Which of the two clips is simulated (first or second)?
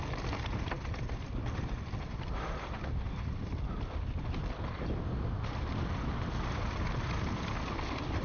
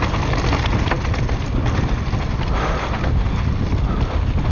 first